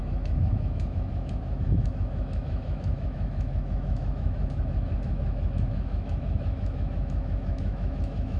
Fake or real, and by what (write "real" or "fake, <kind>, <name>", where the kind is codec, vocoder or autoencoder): fake, autoencoder, DAC-VAE